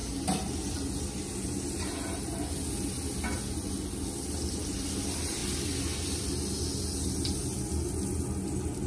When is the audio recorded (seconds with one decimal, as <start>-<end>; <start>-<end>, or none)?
0.0-8.9